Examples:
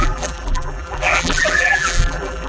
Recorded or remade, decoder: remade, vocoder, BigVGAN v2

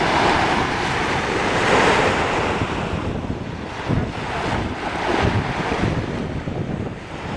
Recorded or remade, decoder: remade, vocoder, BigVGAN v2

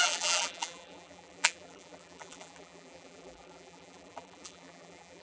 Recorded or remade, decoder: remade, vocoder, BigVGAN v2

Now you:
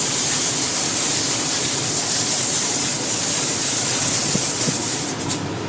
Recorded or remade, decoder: remade, vocoder, BigVGAN v2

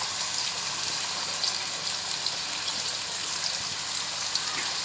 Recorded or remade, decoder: recorded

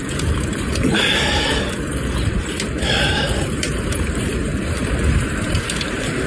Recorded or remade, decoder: remade, vocoder, BigVGAN v2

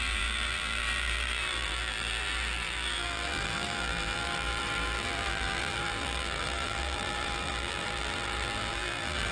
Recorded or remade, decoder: remade, vocoder, BigVGAN v2